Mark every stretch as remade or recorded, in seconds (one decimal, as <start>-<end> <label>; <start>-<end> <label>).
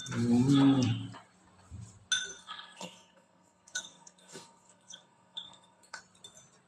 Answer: 0.0-2.3 recorded; 2.3-6.0 remade; 6.0-6.7 recorded